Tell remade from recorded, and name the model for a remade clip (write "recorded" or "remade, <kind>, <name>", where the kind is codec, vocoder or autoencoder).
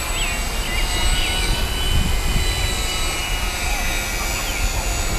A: recorded